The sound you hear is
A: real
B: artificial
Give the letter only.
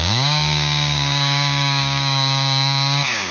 B